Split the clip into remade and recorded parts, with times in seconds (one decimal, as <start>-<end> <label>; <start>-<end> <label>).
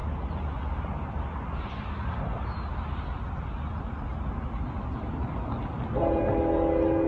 0.0-7.1 recorded